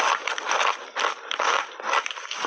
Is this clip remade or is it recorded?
recorded